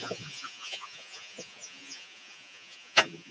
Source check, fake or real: fake